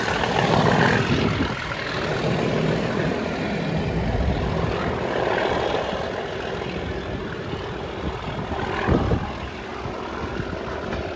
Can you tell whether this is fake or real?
real